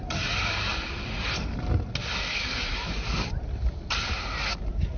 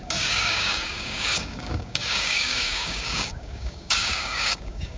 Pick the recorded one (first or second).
first